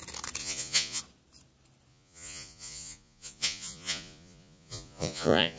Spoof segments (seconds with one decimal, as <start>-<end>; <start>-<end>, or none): 0.4-1.0; 1.9-5.6